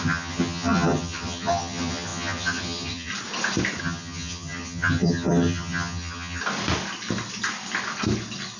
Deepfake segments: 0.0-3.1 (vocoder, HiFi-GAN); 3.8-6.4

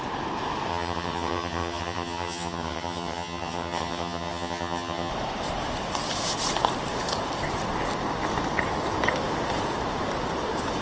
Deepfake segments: 0.7-5.1 (vocoder, HiFi-GAN)

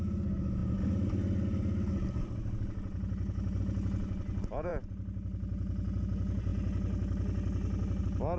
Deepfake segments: none

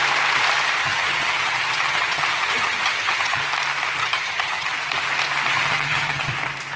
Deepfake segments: 0.8-3.4 (vocoder, HiFi-GAN); 4.0-4.7; 5.5-6.3